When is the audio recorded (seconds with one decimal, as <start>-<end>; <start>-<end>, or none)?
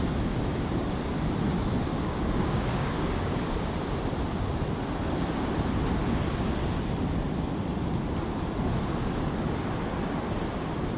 0.0-1.9; 3.7-11.0